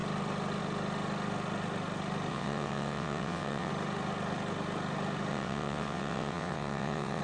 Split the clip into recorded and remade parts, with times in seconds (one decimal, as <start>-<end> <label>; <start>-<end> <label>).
0.0-2.3 recorded; 2.3-3.7 remade; 3.7-5.3 recorded; 5.3-7.2 remade